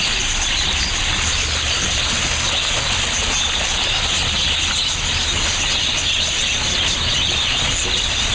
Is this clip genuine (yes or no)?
yes